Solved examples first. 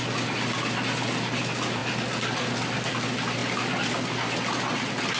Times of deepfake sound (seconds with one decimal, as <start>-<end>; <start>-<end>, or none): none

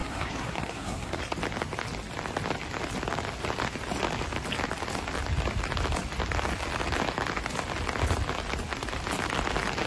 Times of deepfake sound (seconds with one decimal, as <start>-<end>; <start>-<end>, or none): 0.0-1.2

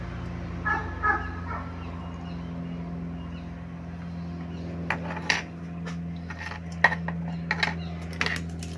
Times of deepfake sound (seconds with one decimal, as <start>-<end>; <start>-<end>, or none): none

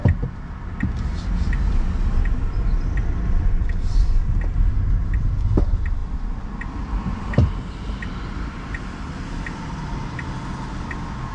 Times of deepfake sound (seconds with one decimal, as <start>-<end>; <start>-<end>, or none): 6.0-7.7

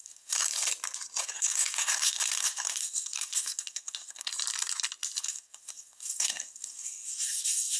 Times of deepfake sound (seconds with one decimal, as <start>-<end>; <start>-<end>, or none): 0.0-0.5; 1.2-4.3; 5.2-7.8

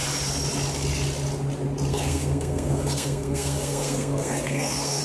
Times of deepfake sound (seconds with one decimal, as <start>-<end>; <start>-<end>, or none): 1.9-5.0

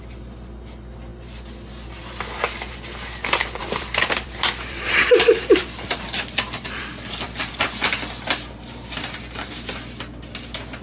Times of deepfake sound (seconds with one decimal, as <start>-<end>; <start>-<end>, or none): 3.6-7.5